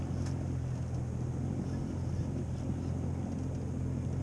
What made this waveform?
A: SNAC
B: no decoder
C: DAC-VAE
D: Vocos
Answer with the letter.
B